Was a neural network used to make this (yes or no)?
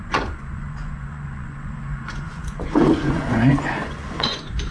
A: yes